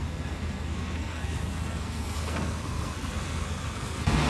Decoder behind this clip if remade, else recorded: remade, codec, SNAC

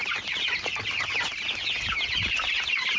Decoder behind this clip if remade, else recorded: recorded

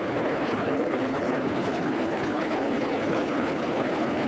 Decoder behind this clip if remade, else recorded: remade, codec, HILCodec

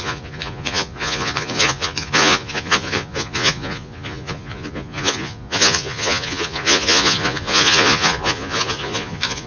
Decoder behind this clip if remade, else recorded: remade, vocoder, Vocos